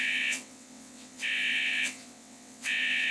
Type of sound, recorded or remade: remade